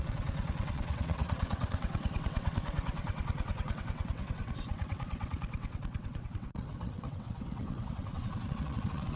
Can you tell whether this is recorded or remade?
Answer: remade